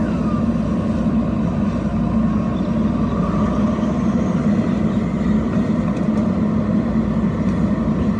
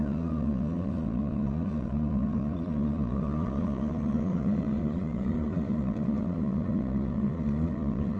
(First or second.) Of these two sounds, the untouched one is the first